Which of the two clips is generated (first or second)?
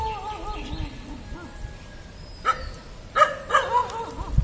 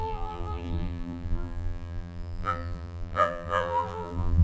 second